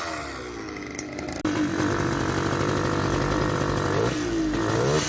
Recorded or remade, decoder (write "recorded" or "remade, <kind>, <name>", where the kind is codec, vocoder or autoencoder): recorded